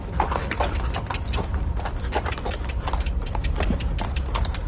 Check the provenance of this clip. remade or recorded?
remade